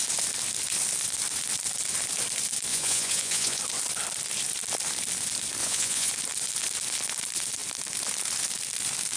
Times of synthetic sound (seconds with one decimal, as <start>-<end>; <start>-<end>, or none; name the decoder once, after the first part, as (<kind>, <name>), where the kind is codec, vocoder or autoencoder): 2.7-3.6 (vocoder, Vocos); 5.6-6.1